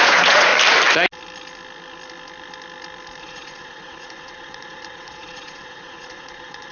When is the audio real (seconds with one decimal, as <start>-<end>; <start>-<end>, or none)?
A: 0.5-3.2